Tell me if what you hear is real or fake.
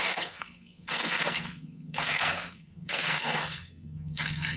fake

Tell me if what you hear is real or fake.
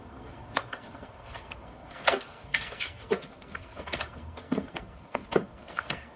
fake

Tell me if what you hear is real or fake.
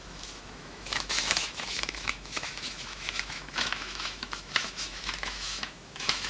fake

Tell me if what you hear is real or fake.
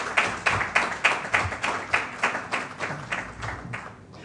real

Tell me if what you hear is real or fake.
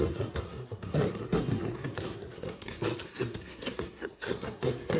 fake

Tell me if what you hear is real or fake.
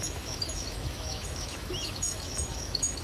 fake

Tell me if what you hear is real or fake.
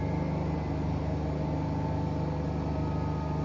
real